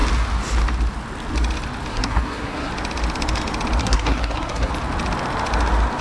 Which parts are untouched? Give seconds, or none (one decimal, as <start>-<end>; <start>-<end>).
0.0-1.9; 2.7-3.8; 4.7-6.0